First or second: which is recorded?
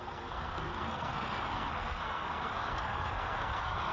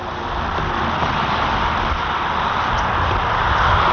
second